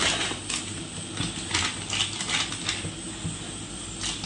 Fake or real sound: real